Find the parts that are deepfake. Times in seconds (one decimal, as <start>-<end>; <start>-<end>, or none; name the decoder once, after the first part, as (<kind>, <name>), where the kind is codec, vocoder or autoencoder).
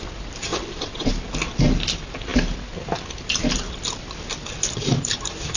0.5-1.1 (vocoder, WaveNeXt)